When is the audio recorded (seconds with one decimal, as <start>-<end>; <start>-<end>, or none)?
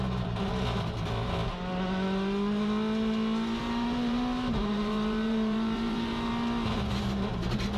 0.0-3.6; 6.3-7.8